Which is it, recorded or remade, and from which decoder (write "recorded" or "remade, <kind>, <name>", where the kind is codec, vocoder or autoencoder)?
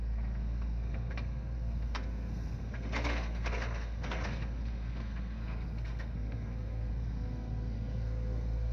remade, codec, SNAC